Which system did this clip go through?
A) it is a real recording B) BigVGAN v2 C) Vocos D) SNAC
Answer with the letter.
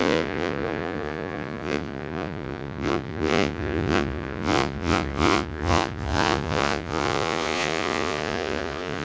C